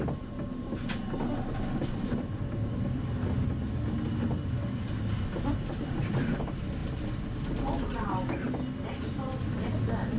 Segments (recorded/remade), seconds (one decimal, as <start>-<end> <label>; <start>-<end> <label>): 0.0-10.2 recorded